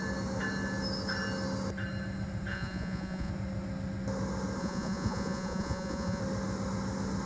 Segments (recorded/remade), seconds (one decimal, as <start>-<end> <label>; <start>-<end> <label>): 0.0-2.5 recorded; 2.5-3.3 remade; 3.3-4.6 recorded; 4.6-6.2 remade; 6.2-7.3 recorded